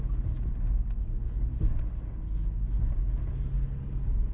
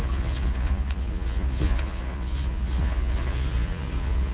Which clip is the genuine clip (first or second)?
first